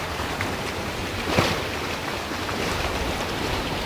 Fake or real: fake